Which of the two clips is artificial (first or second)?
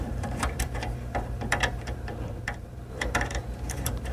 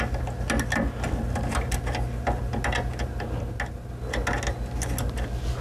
first